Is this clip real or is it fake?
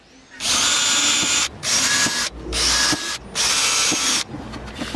real